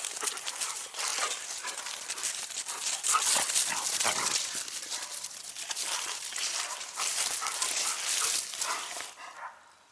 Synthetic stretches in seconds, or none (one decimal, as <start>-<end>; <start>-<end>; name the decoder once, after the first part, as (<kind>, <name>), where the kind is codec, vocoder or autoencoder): 0.0-1.1 (vocoder, BigVGAN v2); 5.7-7.4